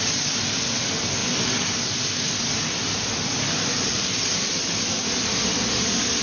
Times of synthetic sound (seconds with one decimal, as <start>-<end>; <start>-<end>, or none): none